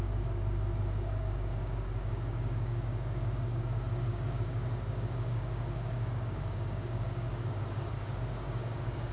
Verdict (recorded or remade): remade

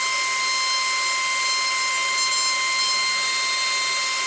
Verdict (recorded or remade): recorded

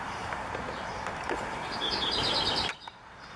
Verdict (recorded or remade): remade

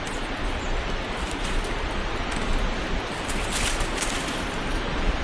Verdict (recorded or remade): recorded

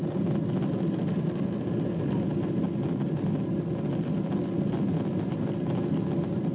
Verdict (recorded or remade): recorded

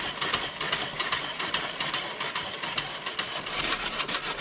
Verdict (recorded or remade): recorded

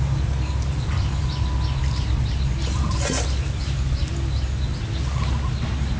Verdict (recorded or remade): recorded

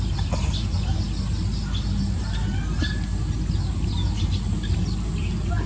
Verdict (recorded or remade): recorded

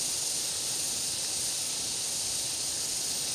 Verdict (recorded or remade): recorded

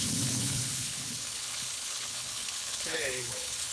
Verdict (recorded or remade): remade